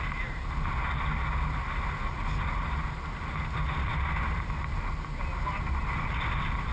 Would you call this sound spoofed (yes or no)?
no